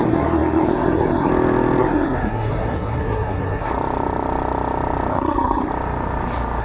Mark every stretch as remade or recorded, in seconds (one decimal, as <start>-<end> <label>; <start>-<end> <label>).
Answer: 0.0-1.3 remade; 1.3-1.8 recorded; 1.8-3.7 remade; 3.7-5.1 recorded; 5.1-5.7 remade; 5.7-6.6 recorded